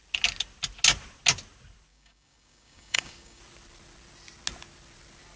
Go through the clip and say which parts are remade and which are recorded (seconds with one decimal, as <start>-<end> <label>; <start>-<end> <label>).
0.0-1.9 recorded; 1.9-3.4 remade; 3.4-5.4 recorded